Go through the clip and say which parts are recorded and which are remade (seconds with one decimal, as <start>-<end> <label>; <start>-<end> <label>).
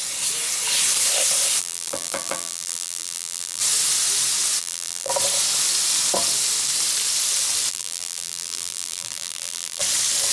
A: 0.0-1.6 recorded; 1.6-3.6 remade; 3.6-4.6 recorded; 4.6-5.1 remade; 5.1-7.7 recorded; 7.7-9.8 remade; 9.8-10.3 recorded